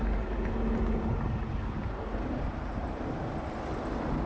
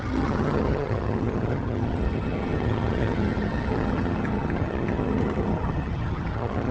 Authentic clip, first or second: first